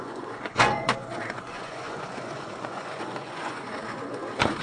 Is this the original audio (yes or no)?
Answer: no